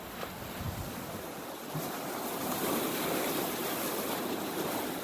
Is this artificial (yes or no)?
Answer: no